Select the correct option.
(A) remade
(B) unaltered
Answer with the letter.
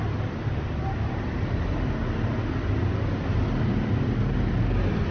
B